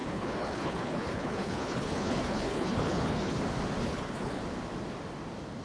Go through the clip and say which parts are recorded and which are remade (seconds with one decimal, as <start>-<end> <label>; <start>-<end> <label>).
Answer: 0.0-3.4 remade; 3.4-3.8 recorded; 3.8-4.4 remade; 4.4-5.6 recorded